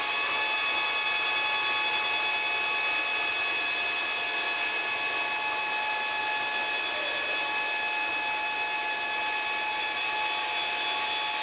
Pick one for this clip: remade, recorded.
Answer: recorded